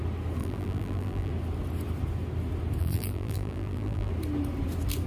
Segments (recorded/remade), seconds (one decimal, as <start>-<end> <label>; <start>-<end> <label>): 0.0-0.4 recorded; 0.4-1.3 remade; 1.3-2.8 recorded; 2.8-4.1 remade; 4.1-5.1 recorded